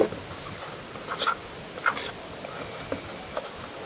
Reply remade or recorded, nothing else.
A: recorded